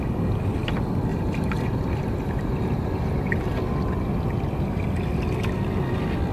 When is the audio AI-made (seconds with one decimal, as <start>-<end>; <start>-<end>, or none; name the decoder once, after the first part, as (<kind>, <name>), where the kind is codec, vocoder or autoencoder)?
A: 1.1-3.5 (vocoder, BigVGAN v2)

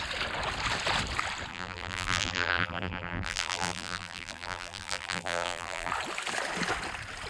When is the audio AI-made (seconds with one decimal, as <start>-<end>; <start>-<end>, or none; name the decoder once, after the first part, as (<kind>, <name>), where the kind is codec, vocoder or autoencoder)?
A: 1.5-5.9 (vocoder, BigVGAN v2)

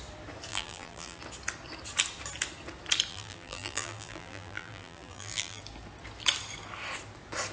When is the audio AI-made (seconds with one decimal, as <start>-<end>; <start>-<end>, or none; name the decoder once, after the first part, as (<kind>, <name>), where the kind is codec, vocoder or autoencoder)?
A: 0.5-1.2 (vocoder, BigVGAN v2); 3.1-5.6

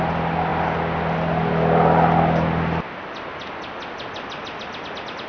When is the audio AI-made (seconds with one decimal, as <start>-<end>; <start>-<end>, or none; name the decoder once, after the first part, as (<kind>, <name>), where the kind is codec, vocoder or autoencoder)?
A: none

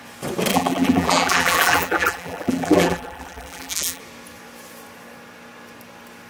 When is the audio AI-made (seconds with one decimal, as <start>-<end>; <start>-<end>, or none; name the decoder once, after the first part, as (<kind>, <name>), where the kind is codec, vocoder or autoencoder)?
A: 0.5-4.0 (vocoder, BigVGAN v2)

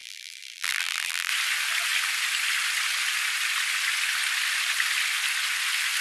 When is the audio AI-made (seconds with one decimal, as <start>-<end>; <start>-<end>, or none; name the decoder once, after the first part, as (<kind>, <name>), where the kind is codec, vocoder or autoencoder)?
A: 0.0-1.3 (vocoder, BigVGAN v2)

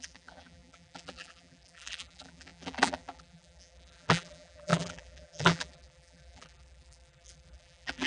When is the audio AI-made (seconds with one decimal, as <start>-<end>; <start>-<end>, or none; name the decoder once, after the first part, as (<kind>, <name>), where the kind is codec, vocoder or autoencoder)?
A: 0.0-8.1 (vocoder, BigVGAN v2)